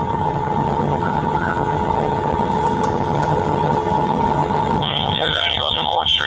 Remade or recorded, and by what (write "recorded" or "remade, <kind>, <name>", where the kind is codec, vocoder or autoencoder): remade, vocoder, HiFi-GAN